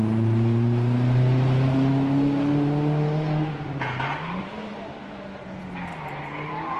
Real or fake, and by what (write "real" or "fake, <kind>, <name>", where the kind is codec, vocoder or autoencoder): real